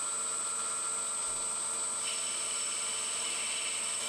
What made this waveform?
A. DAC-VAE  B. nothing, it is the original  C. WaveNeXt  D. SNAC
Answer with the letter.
B